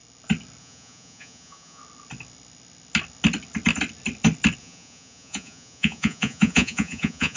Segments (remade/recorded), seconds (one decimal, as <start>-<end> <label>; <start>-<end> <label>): 0.0-0.6 recorded; 0.6-1.8 remade; 1.8-4.6 recorded; 4.6-7.4 remade